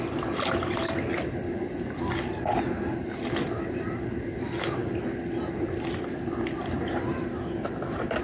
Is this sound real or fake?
real